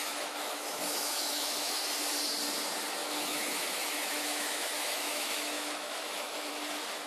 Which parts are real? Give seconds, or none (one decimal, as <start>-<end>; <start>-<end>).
1.8-3.0; 6.5-7.1